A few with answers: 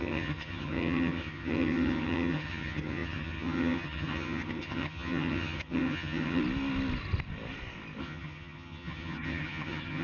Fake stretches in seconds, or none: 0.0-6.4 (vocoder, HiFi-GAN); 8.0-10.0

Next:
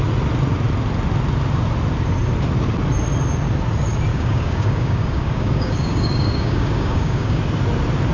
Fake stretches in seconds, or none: 4.1-7.4 (codec, DAC)

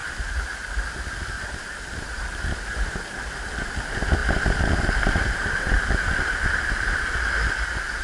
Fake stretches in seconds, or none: none

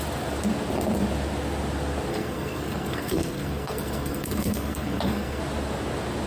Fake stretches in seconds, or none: 2.1-5.4 (codec, SNAC)

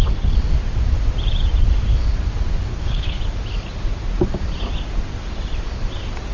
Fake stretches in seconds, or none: 2.7-3.2 (codec, HILCodec)

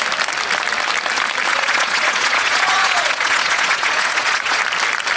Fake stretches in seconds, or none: 1.5-4.6 (vocoder, Vocos)

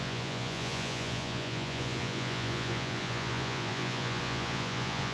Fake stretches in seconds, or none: 0.0-5.1 (vocoder, Vocos)